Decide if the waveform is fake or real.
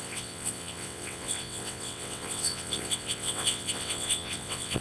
fake